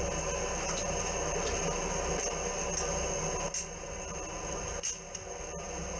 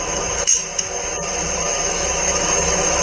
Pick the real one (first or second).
first